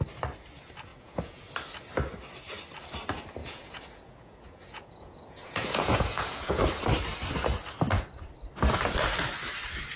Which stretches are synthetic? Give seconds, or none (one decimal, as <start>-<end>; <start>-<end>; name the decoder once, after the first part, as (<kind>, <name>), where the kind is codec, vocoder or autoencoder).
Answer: 0.9-1.4 (vocoder, Vocos); 3.4-6.6